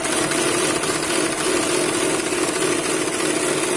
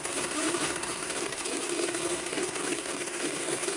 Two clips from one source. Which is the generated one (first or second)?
second